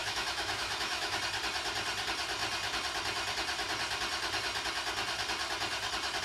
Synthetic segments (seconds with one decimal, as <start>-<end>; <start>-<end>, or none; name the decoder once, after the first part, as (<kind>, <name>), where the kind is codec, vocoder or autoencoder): 0.0-1.2 (autoencoder, DAC-VAE)